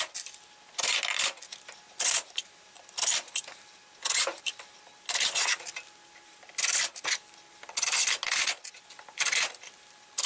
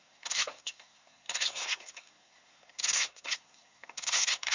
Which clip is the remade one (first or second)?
second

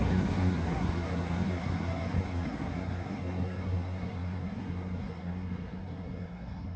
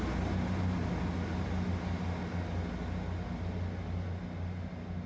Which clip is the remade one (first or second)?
first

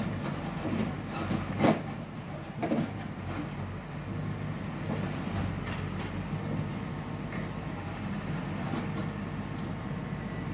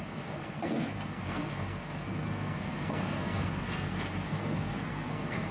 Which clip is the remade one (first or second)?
second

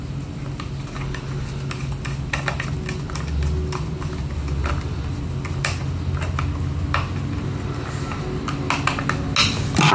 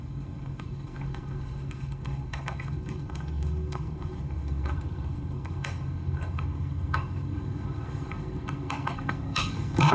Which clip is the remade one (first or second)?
second